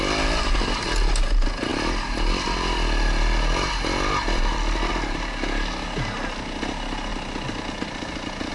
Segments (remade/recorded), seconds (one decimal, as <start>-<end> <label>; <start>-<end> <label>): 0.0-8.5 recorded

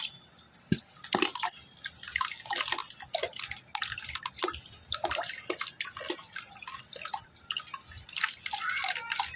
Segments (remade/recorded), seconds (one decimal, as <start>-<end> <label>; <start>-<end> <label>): 0.0-9.4 recorded

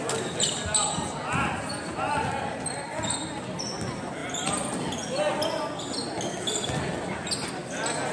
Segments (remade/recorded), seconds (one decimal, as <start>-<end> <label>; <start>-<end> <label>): 0.0-8.1 recorded

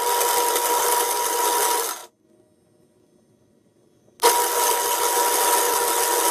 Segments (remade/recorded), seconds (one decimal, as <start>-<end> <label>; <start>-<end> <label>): 0.0-6.3 recorded

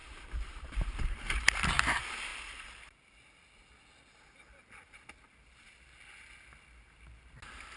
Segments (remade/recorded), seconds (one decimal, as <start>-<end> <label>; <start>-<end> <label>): 0.0-1.8 remade; 1.8-7.8 recorded